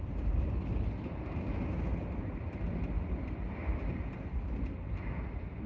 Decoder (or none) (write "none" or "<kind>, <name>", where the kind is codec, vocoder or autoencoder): none